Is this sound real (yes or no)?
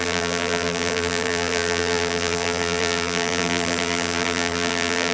no